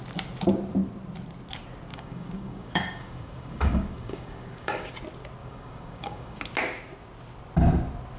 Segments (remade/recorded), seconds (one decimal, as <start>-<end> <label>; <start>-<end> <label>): 0.0-1.9 recorded; 1.9-4.9 remade; 4.9-5.4 recorded; 5.4-6.4 remade; 6.4-8.2 recorded